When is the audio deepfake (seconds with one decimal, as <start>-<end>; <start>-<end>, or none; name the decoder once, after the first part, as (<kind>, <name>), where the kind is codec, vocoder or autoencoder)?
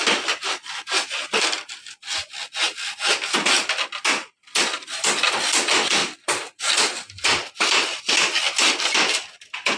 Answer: none